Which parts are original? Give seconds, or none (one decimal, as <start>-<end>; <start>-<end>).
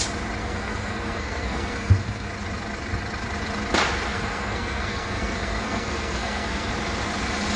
0.0-0.4; 2.3-4.1; 6.7-7.6